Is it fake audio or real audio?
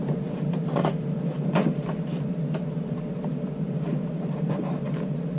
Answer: fake